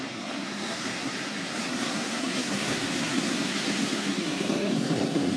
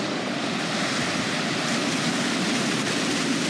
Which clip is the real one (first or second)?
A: second